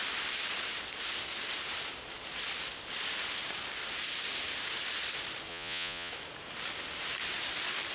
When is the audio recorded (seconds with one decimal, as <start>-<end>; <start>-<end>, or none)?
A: 0.0-5.5; 6.1-7.9